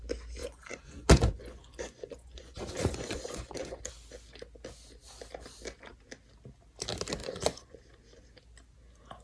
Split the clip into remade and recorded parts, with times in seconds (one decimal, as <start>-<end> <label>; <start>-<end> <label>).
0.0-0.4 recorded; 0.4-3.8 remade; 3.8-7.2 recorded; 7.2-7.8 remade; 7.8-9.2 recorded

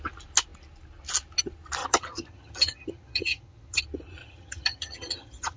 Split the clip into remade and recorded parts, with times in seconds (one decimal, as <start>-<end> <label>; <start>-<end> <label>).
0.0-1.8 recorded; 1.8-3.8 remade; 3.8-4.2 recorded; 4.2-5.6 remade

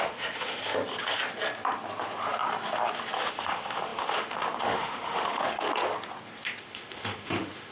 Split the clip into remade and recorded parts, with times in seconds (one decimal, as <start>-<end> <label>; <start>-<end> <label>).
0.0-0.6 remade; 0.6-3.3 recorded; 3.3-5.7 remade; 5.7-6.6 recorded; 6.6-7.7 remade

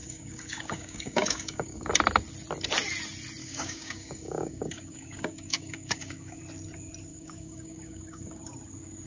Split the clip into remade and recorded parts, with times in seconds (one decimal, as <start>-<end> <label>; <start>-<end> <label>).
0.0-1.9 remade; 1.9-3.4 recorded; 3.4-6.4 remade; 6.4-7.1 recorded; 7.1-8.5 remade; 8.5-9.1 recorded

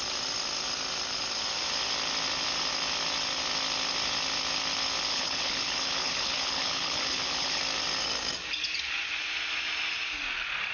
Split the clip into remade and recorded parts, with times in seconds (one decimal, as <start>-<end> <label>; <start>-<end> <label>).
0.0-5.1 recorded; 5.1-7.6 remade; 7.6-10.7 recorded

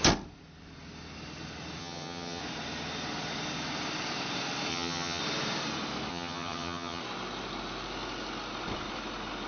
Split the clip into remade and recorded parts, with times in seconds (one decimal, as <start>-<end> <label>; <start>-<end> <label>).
0.0-1.8 recorded; 1.8-2.4 remade; 2.4-4.7 recorded; 4.7-5.2 remade; 5.2-6.1 recorded; 6.1-7.0 remade; 7.0-9.5 recorded